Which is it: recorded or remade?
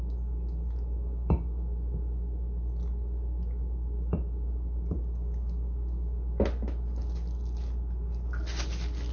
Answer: recorded